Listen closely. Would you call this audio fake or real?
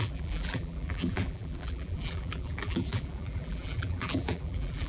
fake